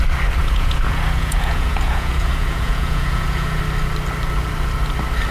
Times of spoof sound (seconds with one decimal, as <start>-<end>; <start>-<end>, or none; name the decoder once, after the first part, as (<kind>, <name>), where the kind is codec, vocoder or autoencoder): 0.4-3.6 (vocoder, Vocos)